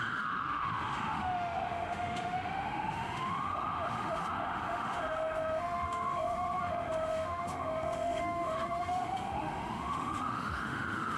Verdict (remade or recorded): remade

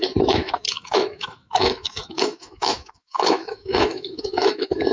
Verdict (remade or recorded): remade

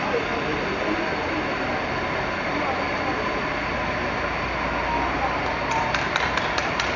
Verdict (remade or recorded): recorded